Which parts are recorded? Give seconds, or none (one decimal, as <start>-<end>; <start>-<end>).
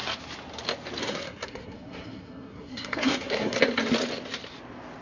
0.0-1.0; 3.6-5.0